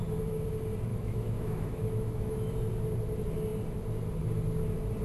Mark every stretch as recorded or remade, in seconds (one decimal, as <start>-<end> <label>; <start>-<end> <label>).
0.0-0.9 recorded; 0.9-2.5 remade; 2.5-5.0 recorded